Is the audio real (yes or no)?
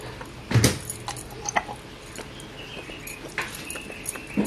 yes